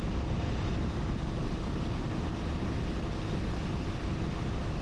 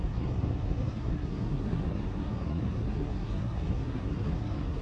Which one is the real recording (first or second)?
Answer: first